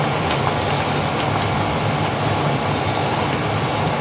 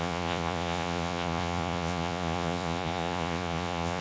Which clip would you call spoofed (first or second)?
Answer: second